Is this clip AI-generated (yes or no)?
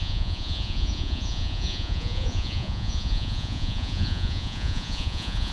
yes